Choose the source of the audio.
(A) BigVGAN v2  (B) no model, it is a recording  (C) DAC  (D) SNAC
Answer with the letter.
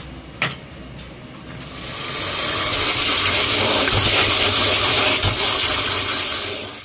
B